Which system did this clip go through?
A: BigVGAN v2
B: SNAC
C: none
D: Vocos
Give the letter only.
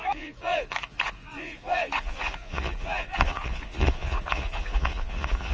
D